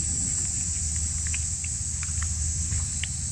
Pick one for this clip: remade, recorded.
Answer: recorded